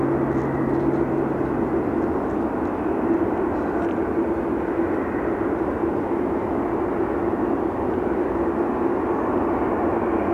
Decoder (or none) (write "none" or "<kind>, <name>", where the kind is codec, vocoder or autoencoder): none